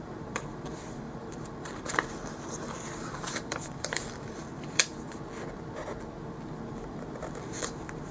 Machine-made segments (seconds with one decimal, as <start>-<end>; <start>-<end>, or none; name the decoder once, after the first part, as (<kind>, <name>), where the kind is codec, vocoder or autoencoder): 0.0-4.9 (vocoder, BigVGAN v2); 6.5-8.1